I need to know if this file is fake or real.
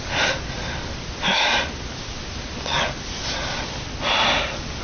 real